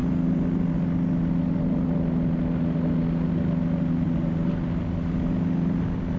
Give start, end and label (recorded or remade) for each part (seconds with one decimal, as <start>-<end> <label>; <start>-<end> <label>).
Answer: 0.0-6.2 recorded